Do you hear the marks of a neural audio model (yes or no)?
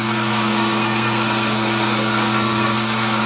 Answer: yes